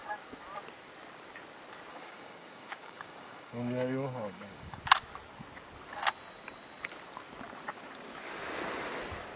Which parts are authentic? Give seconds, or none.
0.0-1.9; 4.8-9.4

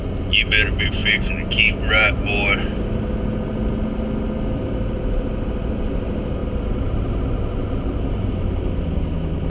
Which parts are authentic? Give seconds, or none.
0.0-9.5

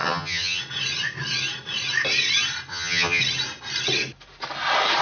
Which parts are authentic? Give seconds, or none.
0.6-2.7; 3.2-5.0

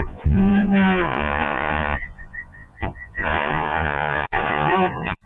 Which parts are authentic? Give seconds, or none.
none

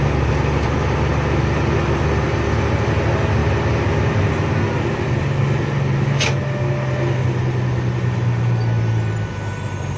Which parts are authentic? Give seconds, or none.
0.0-10.0

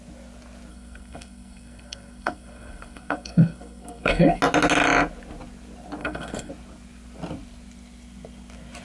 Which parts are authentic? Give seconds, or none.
0.0-0.7; 4.4-6.0; 6.5-8.8

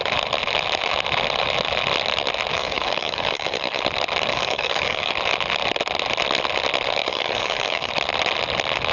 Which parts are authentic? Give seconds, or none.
0.0-2.5; 3.8-4.3; 5.1-7.0; 7.9-8.9

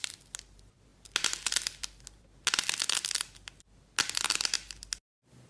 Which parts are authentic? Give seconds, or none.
0.0-5.5